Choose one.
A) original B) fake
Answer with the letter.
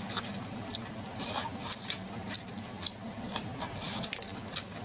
A